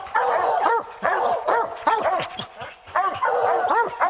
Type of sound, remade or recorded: remade